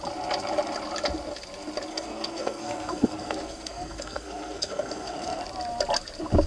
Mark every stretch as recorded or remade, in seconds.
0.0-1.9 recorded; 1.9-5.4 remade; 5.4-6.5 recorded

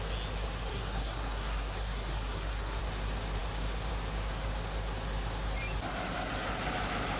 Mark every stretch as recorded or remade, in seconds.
0.0-0.7 recorded; 0.7-2.8 remade; 2.8-7.2 recorded

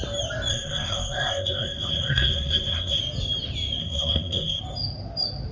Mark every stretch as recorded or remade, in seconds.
0.0-0.5 recorded; 0.5-3.0 remade; 3.0-3.8 recorded; 3.8-4.6 remade; 4.6-5.5 recorded

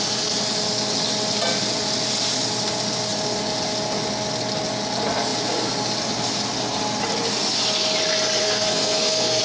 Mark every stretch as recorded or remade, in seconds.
0.0-8.4 recorded; 8.4-9.4 remade